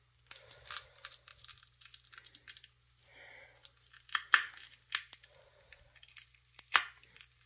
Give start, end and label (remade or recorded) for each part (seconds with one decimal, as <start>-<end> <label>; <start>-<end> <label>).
0.0-7.5 recorded